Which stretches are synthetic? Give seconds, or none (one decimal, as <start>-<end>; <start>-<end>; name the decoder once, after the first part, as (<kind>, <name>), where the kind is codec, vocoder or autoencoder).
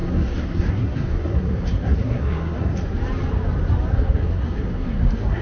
0.0-2.8 (codec, SNAC); 3.9-5.4